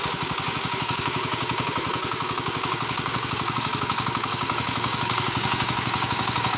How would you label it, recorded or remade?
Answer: remade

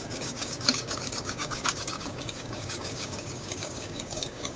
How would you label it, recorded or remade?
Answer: remade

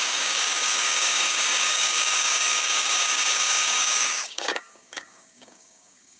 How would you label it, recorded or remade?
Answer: remade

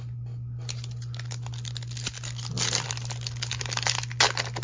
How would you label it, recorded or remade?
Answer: recorded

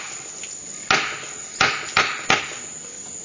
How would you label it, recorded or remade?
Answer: recorded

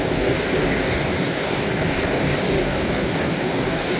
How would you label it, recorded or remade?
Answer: remade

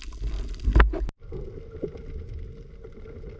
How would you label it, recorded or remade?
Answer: recorded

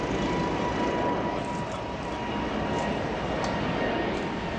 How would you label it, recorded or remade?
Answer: recorded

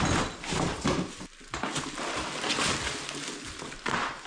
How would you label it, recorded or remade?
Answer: recorded